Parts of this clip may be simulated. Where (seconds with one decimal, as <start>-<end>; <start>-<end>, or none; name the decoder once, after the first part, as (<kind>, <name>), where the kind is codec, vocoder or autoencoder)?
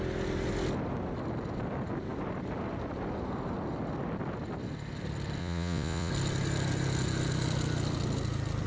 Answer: 5.4-6.1 (vocoder, Vocos)